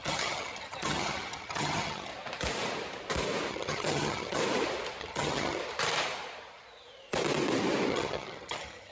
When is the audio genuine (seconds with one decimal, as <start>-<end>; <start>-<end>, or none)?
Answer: 2.1-3.5; 4.4-5.0; 5.6-7.9